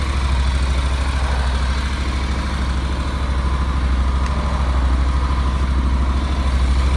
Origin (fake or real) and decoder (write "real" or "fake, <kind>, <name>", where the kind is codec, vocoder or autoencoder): real